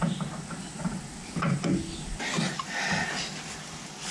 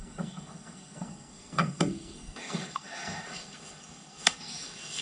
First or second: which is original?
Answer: first